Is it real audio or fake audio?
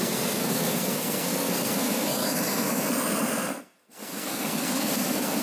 fake